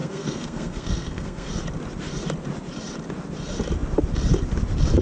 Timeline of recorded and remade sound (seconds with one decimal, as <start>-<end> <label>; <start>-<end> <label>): 0.0-1.5 remade; 1.5-5.0 recorded